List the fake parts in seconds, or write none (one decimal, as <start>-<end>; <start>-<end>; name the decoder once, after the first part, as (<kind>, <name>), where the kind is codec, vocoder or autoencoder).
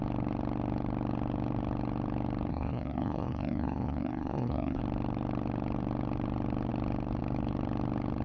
2.5-4.8 (codec, SNAC)